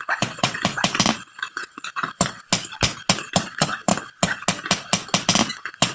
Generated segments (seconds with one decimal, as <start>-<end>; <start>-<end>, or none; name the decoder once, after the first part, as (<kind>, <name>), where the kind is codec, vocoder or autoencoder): 0.0-0.6 (vocoder, WaveNeXt); 1.5-2.5; 3.4-3.9; 5.5-5.9